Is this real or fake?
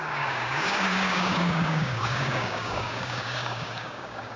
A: fake